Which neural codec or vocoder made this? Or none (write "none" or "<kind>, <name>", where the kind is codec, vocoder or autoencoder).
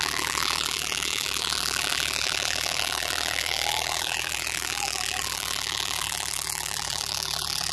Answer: vocoder, BigVGAN v2